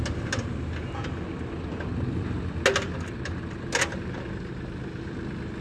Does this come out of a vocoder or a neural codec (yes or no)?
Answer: no